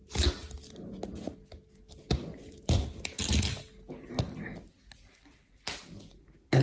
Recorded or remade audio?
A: recorded